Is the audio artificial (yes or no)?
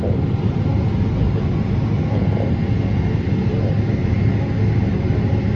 no